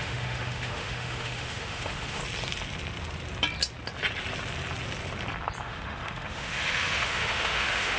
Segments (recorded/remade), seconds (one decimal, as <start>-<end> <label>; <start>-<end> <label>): 0.0-2.2 remade; 2.2-5.6 recorded; 5.6-8.0 remade